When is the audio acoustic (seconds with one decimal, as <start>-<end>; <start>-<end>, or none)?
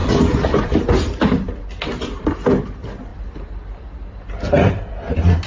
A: 0.0-5.5